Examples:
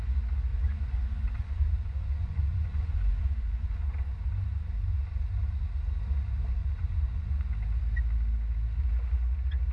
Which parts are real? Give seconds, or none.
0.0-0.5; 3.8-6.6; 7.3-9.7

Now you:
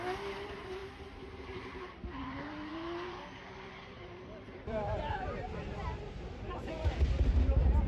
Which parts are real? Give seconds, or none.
0.0-0.8; 1.4-2.7; 6.7-7.9

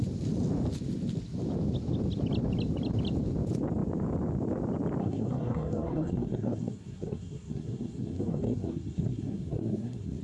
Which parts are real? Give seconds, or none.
0.0-5.0

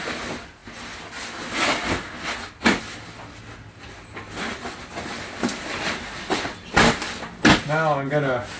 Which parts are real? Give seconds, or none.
0.0-8.6